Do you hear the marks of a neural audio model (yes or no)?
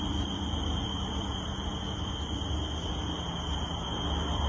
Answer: no